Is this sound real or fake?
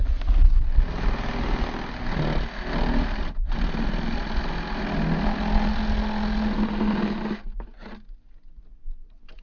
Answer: real